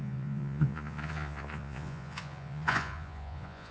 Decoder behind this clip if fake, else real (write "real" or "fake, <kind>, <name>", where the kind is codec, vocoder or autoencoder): fake, vocoder, Vocos